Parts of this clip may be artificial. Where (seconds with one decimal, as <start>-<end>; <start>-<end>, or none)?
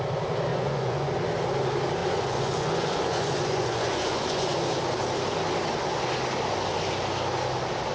0.5-1.1; 2.0-4.6